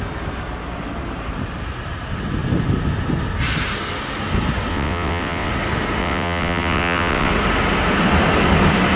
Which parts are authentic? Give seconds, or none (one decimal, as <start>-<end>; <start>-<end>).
0.0-4.7; 5.5-6.0; 7.3-9.0